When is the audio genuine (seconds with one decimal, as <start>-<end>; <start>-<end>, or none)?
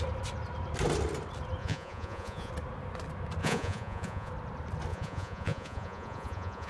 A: 0.0-1.6; 2.5-3.4; 4.3-4.9